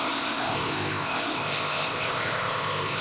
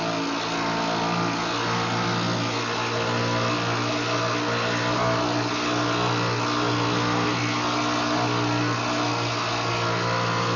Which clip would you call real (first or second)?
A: second